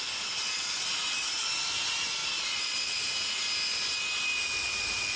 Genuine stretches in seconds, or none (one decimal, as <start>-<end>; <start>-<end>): 0.0-2.2; 3.4-5.2